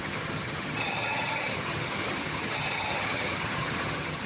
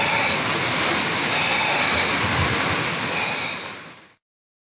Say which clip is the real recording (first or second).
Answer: second